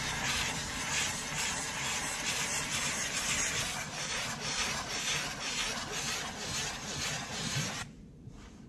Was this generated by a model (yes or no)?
yes